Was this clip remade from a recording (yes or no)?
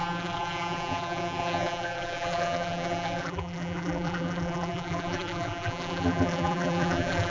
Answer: yes